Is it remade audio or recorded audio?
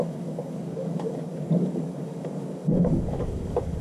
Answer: remade